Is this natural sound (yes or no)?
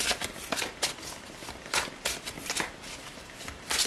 yes